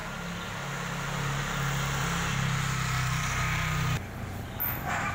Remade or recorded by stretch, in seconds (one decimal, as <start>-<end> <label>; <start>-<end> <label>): 0.0-5.1 recorded